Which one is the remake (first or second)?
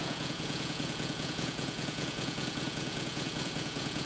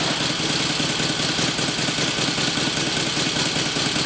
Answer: first